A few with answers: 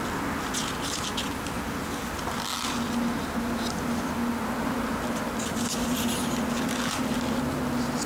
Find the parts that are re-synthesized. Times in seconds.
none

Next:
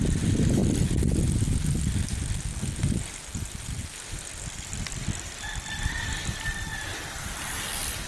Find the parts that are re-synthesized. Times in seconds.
none